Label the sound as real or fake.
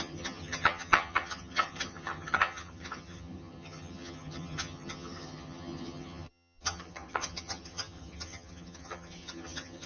fake